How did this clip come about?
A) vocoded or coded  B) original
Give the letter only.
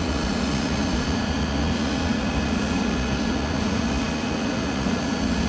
A